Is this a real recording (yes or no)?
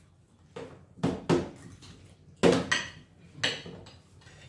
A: yes